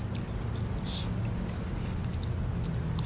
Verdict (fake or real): real